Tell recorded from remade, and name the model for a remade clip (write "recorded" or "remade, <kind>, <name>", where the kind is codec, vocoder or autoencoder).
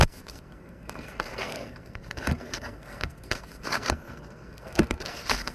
remade, codec, SNAC